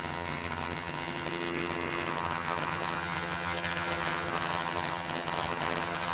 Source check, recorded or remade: remade